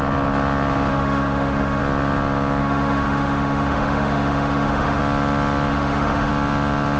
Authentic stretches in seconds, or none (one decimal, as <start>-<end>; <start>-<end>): 0.0-0.9; 1.8-2.6; 5.0-5.7; 6.3-7.0